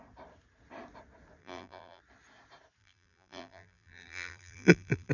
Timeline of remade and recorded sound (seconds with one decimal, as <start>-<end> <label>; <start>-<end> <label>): 0.0-1.4 recorded; 1.4-2.0 remade; 2.0-2.8 recorded; 2.8-5.1 remade